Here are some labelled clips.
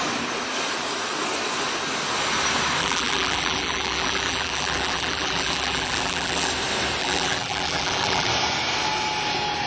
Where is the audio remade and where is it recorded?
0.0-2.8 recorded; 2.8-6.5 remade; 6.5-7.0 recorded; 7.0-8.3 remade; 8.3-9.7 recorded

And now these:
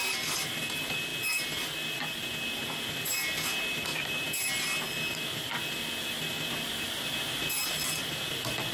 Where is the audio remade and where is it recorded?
0.0-8.7 recorded

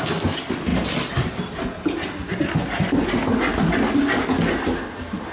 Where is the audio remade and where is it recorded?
0.0-5.3 recorded

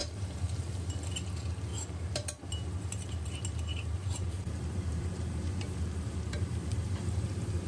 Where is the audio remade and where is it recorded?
0.0-1.0 remade; 1.0-1.7 recorded; 1.7-3.3 remade; 3.3-3.7 recorded; 3.7-7.7 remade